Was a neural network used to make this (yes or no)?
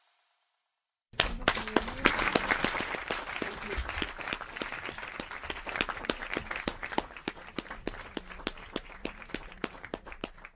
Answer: yes